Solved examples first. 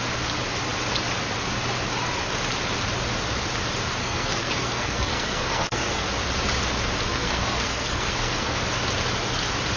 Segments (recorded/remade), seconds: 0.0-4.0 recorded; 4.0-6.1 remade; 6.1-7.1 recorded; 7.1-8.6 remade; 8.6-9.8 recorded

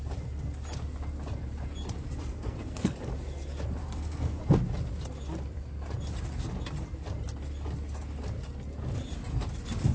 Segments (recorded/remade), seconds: 0.0-2.3 recorded; 2.3-2.9 remade; 2.9-3.8 recorded; 3.8-4.4 remade; 4.4-9.9 recorded

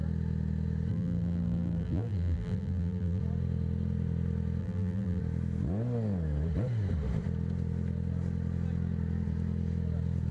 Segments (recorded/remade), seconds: 0.0-0.9 recorded; 0.9-3.2 remade; 3.2-4.6 recorded; 4.6-5.2 remade; 5.2-10.3 recorded

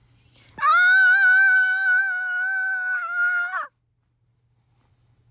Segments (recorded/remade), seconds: 0.0-5.3 recorded